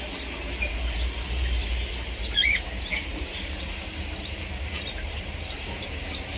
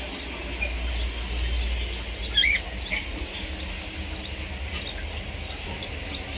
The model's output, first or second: first